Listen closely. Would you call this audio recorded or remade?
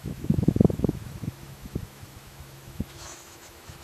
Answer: remade